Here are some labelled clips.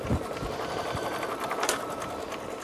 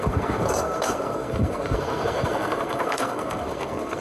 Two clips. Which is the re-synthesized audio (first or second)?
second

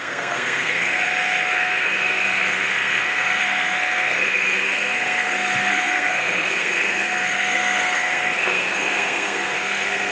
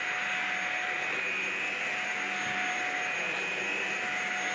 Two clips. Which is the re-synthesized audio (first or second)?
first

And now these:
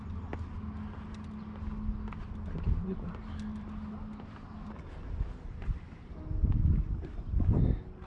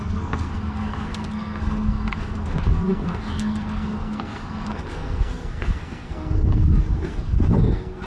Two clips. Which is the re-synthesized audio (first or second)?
second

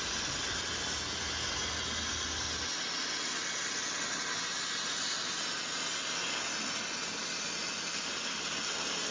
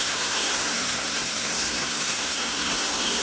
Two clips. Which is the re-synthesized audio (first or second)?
second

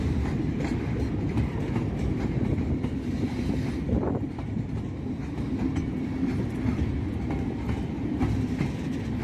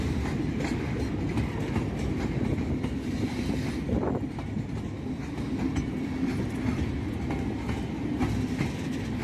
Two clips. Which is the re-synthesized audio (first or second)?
first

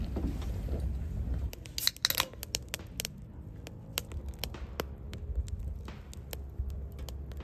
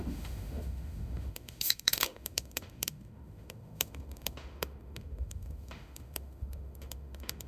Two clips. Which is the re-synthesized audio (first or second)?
second